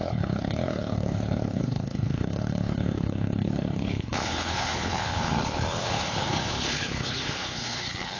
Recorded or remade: remade